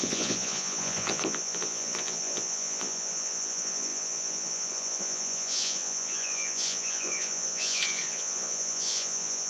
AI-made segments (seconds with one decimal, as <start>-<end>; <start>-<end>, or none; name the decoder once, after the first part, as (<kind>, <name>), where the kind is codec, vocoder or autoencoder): 0.0-9.5 (vocoder, Vocos)